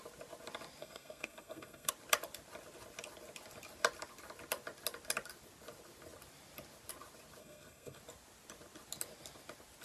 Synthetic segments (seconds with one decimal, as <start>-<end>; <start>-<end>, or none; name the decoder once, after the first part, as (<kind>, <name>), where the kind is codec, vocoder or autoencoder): 0.8-1.9 (codec, SNAC); 7.4-8.0